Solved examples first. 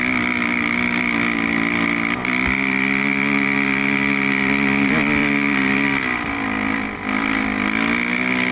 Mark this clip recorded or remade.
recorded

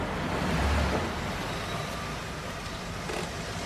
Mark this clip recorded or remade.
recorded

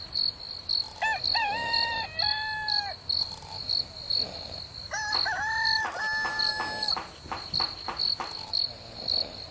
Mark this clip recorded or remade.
recorded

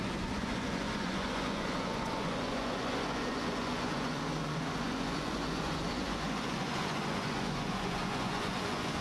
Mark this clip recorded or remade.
remade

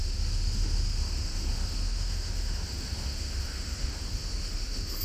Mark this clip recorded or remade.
remade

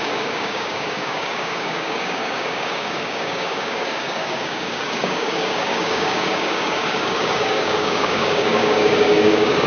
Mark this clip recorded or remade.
remade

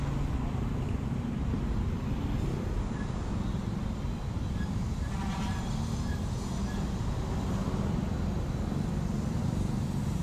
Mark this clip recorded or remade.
recorded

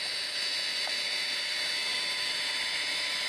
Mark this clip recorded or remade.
recorded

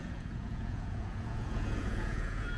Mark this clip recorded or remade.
remade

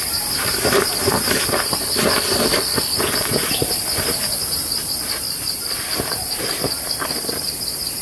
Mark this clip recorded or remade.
recorded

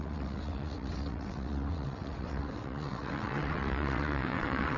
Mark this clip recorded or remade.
remade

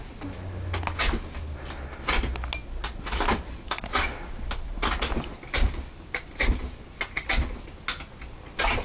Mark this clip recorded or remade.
recorded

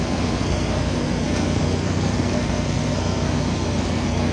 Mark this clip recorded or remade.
remade